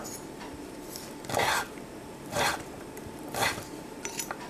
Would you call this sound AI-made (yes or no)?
yes